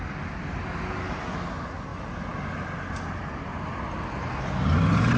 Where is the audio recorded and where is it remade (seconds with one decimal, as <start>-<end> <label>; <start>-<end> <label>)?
0.0-5.2 recorded